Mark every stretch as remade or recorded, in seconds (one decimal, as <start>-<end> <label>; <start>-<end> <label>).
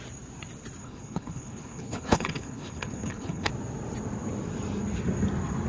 0.0-0.8 recorded; 0.8-3.5 remade; 3.5-5.7 recorded